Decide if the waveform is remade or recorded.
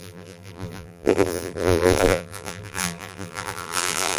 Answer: remade